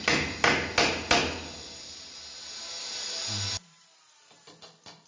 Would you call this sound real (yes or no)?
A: yes